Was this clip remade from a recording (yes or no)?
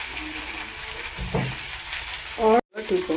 no